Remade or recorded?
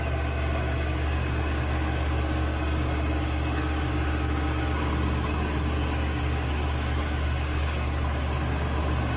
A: remade